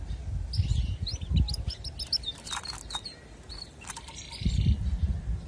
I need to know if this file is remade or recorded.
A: recorded